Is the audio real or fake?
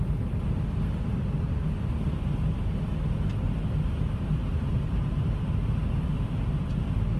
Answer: real